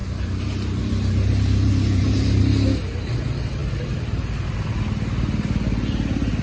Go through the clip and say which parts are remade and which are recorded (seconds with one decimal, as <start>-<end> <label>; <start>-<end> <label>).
0.0-2.4 remade; 2.4-3.6 recorded; 3.6-4.5 remade; 4.5-6.4 recorded